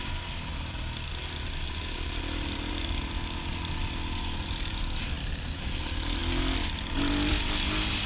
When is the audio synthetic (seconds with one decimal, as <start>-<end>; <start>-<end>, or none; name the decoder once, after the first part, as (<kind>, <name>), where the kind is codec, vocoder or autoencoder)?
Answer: none